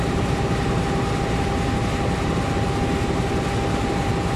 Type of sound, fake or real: real